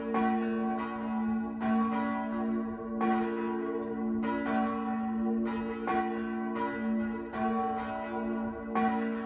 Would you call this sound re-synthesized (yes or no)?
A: no